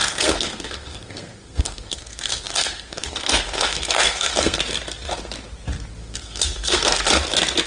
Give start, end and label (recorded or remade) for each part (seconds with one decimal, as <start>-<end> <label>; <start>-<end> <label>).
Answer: 0.0-4.6 remade; 4.6-6.0 recorded; 6.0-7.1 remade; 7.1-7.7 recorded